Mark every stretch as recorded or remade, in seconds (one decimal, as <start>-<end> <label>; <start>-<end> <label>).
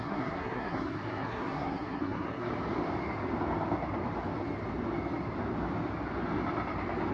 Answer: 0.0-2.5 remade; 2.5-7.1 recorded